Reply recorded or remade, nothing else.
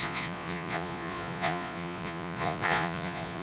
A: remade